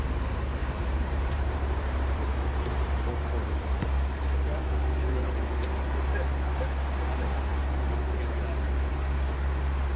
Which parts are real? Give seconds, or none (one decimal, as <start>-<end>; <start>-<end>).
0.0-0.6; 3.8-10.0